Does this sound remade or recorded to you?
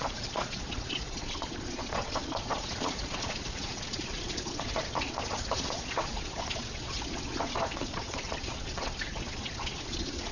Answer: remade